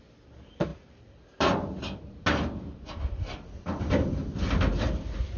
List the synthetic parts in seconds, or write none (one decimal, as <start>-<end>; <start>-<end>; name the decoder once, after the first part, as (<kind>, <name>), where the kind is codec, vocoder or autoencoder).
none